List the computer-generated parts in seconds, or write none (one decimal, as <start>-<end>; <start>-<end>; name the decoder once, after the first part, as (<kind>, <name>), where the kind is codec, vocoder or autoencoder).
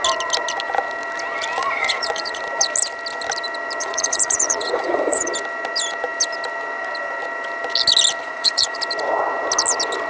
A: 1.6-2.4 (vocoder, Vocos); 3.8-5.3; 8.2-8.8